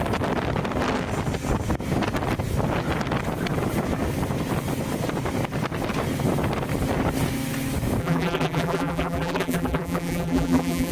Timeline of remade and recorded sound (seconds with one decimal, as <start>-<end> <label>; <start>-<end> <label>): 0.0-8.0 recorded; 8.0-10.9 remade